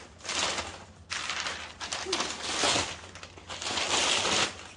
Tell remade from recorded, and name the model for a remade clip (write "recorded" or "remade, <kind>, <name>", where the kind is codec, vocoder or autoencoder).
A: recorded